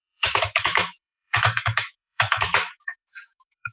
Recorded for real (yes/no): no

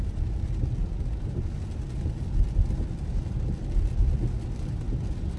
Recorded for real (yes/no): yes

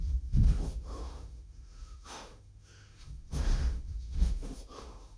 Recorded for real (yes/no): no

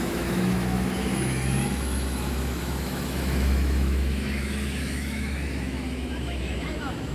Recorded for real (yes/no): no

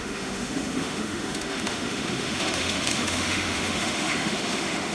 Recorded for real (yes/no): no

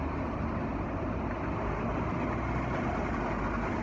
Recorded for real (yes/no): yes